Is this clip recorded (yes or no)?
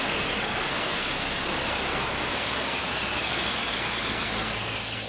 no